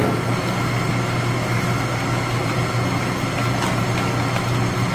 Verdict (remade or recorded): recorded